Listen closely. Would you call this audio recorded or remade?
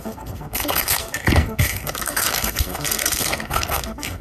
remade